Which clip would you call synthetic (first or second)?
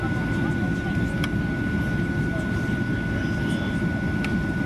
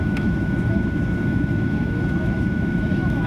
second